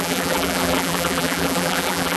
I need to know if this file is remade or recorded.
remade